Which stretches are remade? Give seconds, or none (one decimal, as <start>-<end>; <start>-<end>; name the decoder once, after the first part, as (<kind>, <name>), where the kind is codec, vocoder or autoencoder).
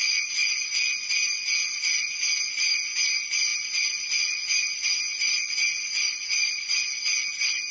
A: none